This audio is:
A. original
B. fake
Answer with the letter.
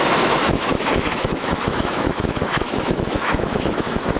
B